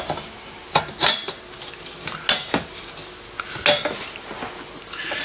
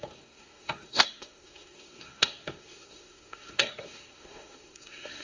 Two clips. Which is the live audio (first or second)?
first